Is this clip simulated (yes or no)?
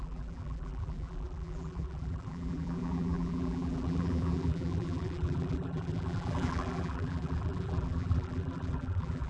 yes